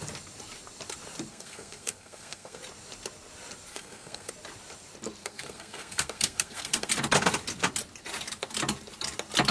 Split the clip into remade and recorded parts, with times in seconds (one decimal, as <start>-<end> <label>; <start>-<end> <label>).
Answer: 0.0-1.3 recorded; 1.3-2.6 remade; 2.6-3.7 recorded; 3.7-4.3 remade; 4.3-5.2 recorded; 5.2-6.9 remade; 6.9-9.5 recorded